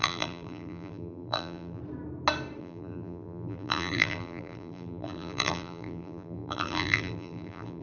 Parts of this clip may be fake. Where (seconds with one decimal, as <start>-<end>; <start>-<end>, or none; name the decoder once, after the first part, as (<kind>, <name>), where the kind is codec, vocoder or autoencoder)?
0.0-1.8 (vocoder, BigVGAN v2); 2.6-7.8